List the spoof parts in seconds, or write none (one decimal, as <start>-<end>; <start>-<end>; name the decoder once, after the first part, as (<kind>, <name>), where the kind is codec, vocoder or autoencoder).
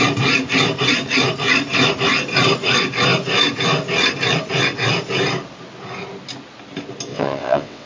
7.1-7.9 (vocoder, WaveNeXt)